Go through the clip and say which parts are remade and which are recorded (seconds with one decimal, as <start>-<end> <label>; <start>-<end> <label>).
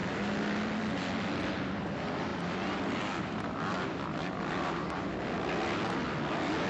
0.0-6.7 recorded